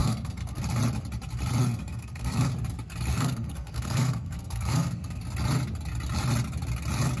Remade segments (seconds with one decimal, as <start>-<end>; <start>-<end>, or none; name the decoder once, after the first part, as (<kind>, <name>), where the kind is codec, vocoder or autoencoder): 0.0-0.6 (codec, SNAC); 1.6-2.5; 3.1-5.2